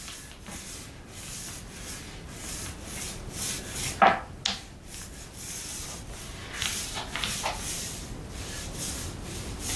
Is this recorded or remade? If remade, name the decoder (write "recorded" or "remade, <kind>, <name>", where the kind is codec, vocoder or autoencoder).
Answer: recorded